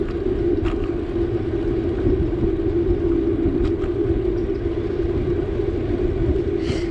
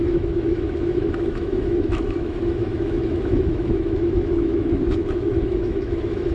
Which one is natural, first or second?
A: first